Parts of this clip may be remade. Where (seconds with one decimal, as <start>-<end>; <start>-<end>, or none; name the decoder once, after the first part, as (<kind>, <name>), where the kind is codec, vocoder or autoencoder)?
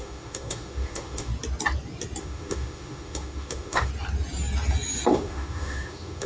0.0-1.3 (autoencoder, DAC-VAE); 2.2-3.9; 5.1-6.3